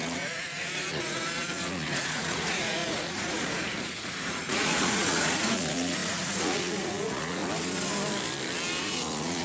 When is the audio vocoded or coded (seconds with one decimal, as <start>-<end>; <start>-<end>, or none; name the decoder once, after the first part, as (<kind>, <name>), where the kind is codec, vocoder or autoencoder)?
0.0-7.4 (vocoder, Vocos); 8.8-9.4